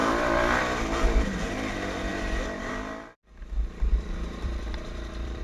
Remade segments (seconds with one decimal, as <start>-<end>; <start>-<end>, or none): 0.0-0.6; 2.1-5.4